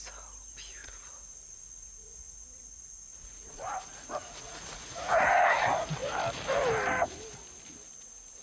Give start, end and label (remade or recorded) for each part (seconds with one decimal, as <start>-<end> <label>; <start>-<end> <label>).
0.0-0.8 recorded; 0.8-5.6 remade; 5.6-8.4 recorded